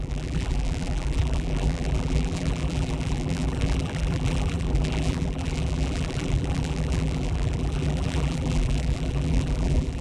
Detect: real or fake fake